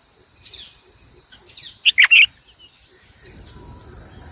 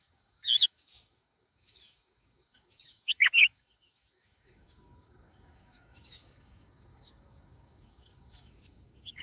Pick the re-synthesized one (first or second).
second